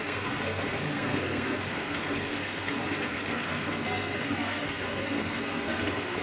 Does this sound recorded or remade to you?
remade